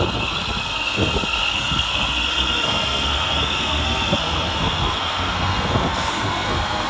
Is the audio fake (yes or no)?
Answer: yes